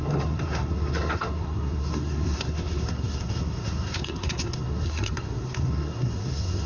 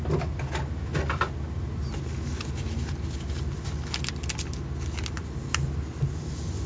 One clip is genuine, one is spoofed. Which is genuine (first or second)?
second